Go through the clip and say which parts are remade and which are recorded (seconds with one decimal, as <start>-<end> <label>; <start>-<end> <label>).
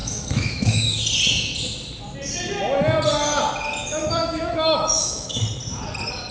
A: 0.0-1.0 remade; 1.0-3.8 recorded; 3.8-5.4 remade; 5.4-6.3 recorded